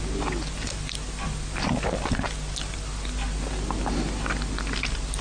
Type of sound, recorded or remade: recorded